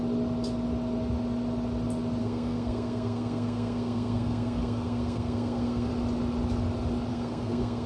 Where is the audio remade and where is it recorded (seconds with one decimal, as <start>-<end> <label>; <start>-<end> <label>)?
0.0-2.2 recorded; 2.2-5.9 remade; 5.9-7.1 recorded; 7.1-7.9 remade